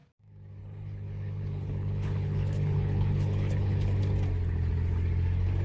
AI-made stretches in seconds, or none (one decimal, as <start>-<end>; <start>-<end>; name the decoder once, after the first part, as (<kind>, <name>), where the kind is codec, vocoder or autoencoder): 0.6-4.0 (codec, HILCodec)